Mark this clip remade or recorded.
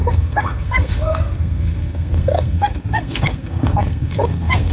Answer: remade